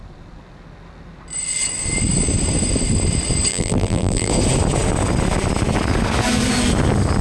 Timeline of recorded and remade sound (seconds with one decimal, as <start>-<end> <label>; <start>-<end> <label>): 0.0-3.5 recorded; 3.5-4.3 remade; 4.3-7.2 recorded